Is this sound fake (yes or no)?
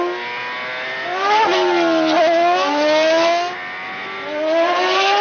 no